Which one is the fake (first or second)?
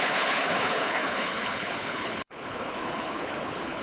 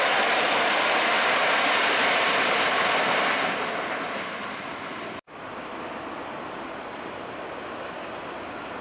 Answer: first